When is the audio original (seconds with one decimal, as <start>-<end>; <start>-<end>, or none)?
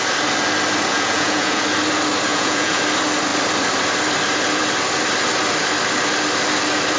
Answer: 0.0-0.9; 1.6-2.3; 2.8-7.0